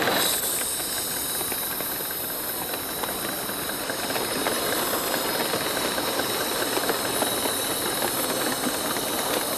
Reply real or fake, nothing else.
real